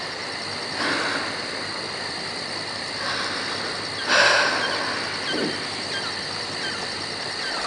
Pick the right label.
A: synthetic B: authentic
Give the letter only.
B